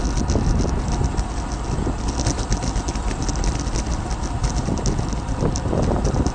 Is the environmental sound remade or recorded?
recorded